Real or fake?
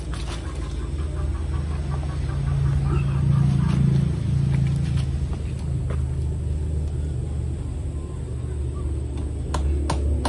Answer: real